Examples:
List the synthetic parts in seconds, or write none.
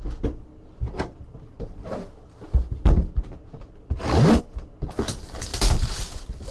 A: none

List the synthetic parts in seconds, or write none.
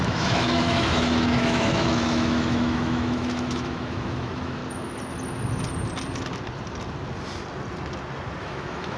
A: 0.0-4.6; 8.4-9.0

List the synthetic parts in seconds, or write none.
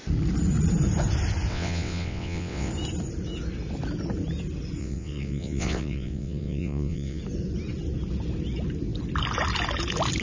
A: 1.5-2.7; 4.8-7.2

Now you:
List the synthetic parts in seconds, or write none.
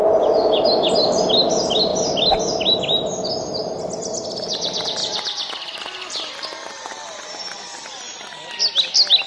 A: 5.0-8.5